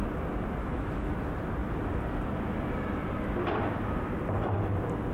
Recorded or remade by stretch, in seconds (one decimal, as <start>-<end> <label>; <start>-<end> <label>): 0.0-0.6 recorded; 0.6-1.1 remade; 1.1-5.1 recorded